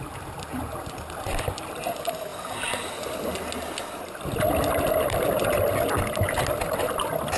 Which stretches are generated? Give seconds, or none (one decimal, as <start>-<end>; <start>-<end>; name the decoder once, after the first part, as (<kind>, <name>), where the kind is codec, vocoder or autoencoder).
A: none